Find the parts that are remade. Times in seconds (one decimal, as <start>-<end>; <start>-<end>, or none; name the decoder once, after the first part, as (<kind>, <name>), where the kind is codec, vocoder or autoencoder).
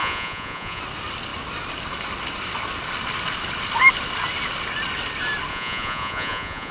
0.0-0.8 (vocoder, Vocos); 5.5-6.7